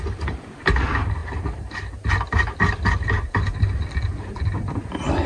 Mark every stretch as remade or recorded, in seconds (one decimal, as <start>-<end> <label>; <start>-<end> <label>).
0.0-5.3 recorded